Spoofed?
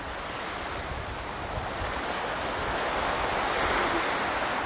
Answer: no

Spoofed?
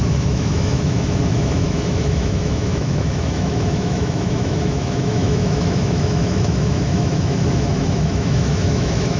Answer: yes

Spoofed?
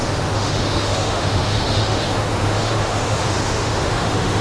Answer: yes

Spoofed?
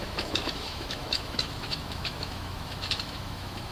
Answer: yes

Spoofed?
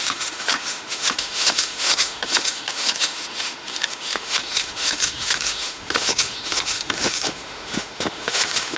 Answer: yes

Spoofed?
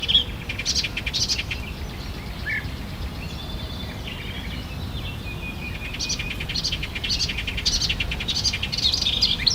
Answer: no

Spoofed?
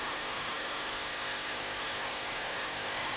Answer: yes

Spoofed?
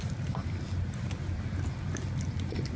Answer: no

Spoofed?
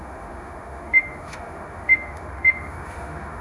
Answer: yes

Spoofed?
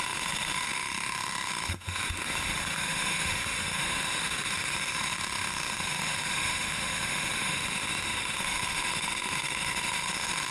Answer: yes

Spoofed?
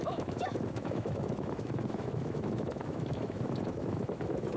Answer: yes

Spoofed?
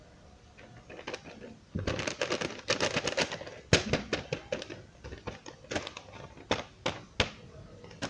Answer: no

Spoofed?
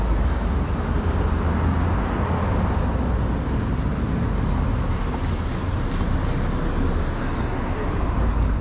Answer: no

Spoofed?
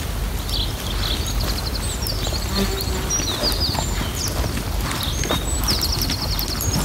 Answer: no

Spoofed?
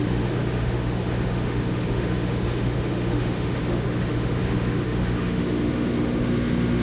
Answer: yes